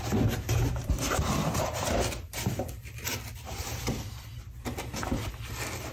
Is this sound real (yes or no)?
yes